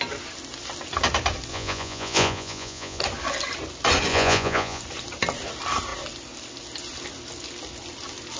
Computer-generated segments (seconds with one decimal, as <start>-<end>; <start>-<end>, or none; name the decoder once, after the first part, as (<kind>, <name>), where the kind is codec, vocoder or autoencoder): 1.5-3.0 (vocoder, Vocos); 4.1-4.8